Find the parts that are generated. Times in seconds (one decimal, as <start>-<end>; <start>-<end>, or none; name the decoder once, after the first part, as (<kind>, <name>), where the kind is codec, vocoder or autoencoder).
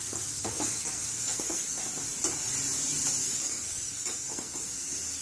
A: 0.0-1.8 (codec, SNAC); 3.2-5.2